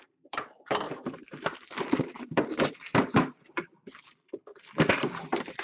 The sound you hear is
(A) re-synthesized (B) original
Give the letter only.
A